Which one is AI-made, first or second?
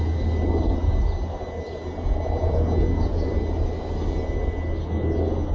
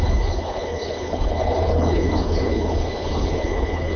second